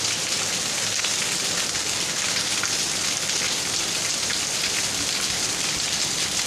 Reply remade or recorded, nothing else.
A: recorded